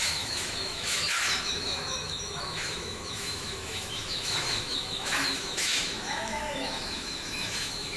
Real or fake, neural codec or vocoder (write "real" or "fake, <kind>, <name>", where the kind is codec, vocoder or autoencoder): fake, autoencoder, DAC-VAE